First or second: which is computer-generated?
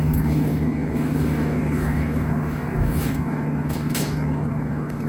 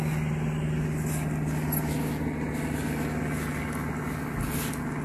first